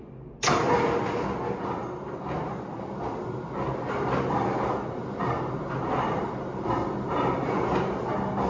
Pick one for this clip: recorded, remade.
recorded